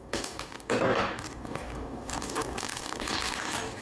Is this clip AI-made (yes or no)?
yes